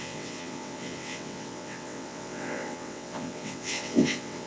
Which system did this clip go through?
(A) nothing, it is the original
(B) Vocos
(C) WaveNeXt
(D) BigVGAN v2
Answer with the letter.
C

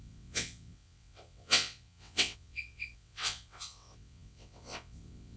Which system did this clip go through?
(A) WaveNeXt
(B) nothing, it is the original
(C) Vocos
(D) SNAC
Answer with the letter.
A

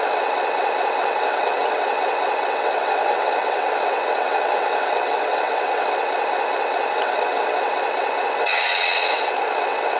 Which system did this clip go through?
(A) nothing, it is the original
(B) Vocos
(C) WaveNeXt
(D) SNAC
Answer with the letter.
C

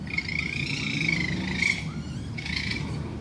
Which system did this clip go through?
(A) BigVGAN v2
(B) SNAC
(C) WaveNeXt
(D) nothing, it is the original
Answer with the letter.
D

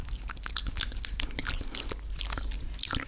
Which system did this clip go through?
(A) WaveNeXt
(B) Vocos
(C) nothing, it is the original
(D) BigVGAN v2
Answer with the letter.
C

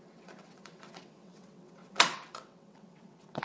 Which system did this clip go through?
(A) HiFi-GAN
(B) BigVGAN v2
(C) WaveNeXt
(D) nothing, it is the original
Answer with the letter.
C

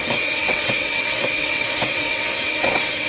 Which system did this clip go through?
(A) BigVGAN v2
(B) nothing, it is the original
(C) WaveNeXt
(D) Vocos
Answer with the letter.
C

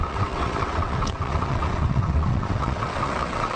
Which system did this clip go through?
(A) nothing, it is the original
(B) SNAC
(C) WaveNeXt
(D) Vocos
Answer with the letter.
C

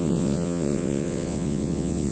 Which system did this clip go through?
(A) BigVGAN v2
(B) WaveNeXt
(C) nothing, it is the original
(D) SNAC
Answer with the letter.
B